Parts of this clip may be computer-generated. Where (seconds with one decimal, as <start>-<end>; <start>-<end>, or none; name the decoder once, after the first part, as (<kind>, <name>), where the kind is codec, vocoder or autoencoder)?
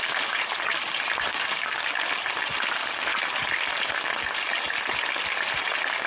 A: 1.3-1.8 (codec, DAC)